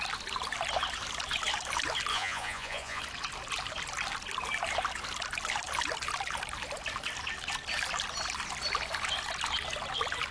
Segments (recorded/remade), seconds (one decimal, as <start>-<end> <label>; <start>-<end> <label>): 0.0-2.1 recorded; 2.1-3.0 remade; 3.0-10.3 recorded